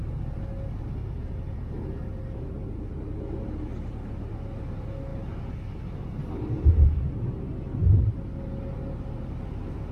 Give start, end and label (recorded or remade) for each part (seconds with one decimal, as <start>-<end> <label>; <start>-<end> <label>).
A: 0.0-1.0 recorded; 1.0-1.7 remade; 1.7-9.9 recorded